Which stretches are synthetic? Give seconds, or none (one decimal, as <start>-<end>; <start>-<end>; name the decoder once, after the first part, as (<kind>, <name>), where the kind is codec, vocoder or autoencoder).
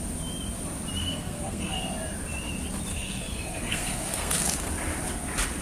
1.0-1.8 (codec, SNAC); 2.9-4.7